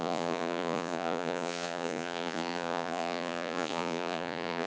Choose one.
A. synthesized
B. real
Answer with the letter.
A